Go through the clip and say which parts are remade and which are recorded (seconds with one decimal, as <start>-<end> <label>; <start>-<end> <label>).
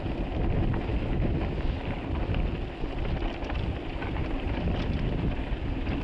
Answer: 0.0-6.0 recorded